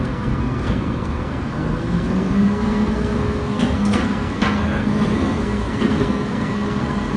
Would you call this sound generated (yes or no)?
yes